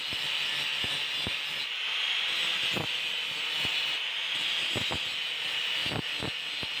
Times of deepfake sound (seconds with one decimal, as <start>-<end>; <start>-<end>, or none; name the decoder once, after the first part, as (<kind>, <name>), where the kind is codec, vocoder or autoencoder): none